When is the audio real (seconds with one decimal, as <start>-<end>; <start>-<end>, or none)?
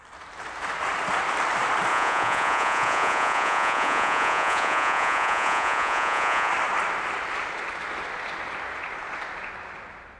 0.0-1.9; 6.5-10.2